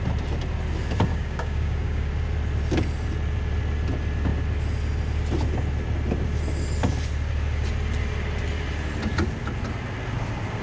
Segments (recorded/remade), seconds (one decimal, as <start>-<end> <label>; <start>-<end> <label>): 0.0-1.1 recorded; 1.1-2.1 remade; 2.1-10.6 recorded